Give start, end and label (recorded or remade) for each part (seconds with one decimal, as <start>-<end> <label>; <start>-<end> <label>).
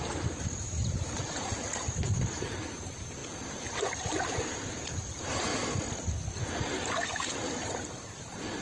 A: 0.0-5.5 remade; 5.5-7.4 recorded; 7.4-8.6 remade